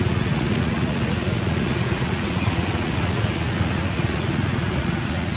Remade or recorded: remade